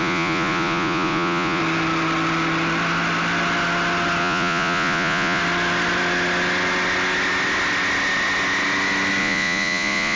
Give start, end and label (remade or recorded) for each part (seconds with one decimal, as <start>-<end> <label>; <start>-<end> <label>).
0.0-1.6 remade; 1.6-4.2 recorded; 4.2-5.4 remade; 5.4-9.2 recorded; 9.2-10.2 remade

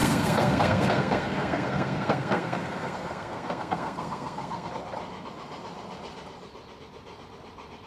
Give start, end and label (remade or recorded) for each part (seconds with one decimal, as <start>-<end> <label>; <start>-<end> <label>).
0.0-4.7 remade; 4.7-7.9 recorded